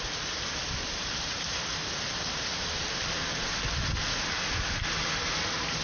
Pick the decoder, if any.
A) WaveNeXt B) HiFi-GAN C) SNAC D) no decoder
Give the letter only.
D